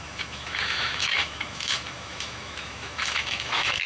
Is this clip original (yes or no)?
no